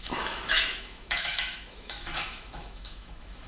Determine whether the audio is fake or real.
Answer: fake